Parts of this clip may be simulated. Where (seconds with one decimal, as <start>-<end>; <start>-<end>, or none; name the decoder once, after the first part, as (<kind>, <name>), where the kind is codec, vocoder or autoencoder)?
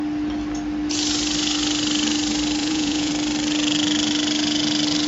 2.6-3.1 (vocoder, Vocos)